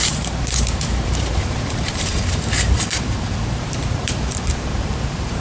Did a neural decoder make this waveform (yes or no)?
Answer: yes